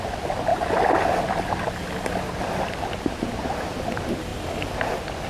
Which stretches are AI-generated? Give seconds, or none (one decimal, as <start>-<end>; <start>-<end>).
none